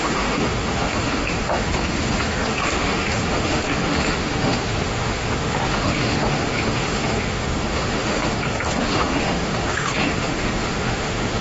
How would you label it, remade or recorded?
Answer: remade